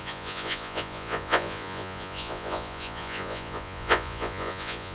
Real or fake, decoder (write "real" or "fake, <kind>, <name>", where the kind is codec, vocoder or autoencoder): fake, vocoder, Vocos